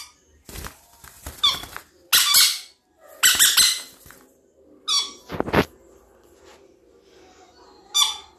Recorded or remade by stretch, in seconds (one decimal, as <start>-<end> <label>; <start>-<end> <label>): 0.0-8.4 recorded